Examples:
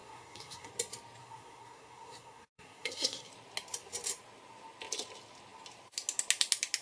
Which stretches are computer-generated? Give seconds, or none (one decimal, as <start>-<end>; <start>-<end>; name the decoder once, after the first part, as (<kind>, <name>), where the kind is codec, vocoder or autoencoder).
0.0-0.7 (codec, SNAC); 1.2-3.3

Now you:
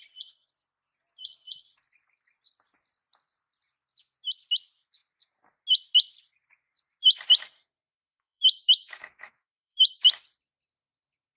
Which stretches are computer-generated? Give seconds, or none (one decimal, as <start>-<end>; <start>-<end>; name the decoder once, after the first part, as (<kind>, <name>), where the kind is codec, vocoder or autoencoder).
7.9-10.1 (autoencoder, DAC-VAE)

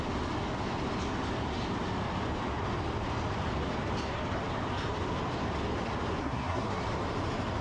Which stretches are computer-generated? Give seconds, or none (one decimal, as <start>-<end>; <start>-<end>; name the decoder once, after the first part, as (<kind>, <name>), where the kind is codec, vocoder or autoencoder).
6.2-6.8 (codec, SNAC)

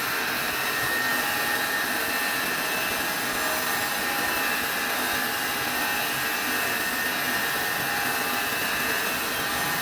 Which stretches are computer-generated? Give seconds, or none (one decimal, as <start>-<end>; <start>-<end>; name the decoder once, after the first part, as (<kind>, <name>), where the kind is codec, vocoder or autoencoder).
none

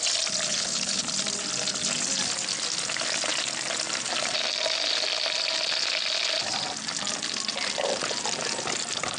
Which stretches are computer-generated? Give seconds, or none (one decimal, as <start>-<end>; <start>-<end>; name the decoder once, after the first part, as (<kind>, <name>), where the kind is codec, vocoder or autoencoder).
0.5-1.0 (codec, HILCodec)

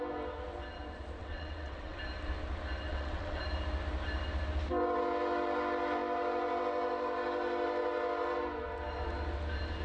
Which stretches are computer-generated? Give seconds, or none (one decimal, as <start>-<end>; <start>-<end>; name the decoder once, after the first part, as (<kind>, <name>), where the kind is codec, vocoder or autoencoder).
1.2-2.0 (vocoder, WaveNeXt); 2.9-3.4

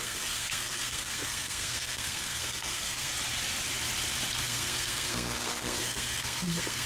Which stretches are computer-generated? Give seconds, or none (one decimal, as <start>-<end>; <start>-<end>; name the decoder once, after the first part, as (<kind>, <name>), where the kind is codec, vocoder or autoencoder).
0.0-3.1 (codec, SNAC); 4.4-6.9